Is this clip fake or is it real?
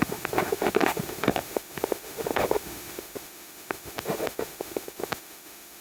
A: fake